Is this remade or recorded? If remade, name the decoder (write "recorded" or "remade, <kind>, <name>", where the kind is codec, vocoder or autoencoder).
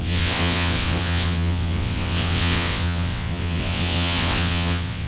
remade, vocoder, WaveNeXt